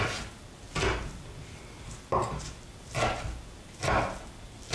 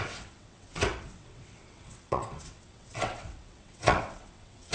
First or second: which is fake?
second